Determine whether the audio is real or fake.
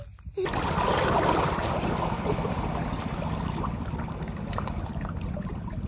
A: real